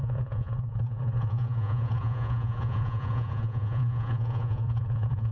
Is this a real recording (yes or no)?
no